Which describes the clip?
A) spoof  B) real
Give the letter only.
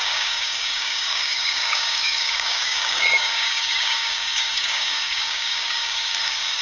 A